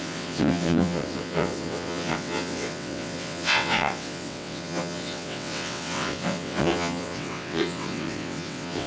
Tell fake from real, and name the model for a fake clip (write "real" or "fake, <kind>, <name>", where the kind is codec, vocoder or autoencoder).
fake, vocoder, WaveNeXt